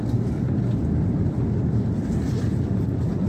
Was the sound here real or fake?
real